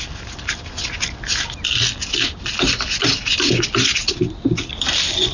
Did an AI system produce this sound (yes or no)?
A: no